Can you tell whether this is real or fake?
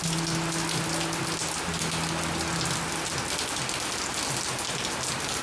real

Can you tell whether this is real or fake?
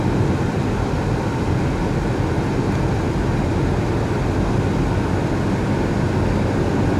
real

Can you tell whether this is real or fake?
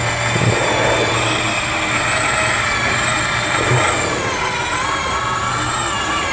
real